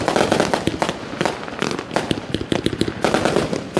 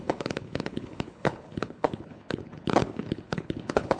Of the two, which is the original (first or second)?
first